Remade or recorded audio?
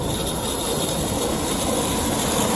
recorded